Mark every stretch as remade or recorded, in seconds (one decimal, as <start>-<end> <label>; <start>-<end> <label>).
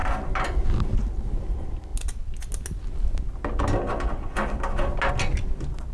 0.0-5.9 recorded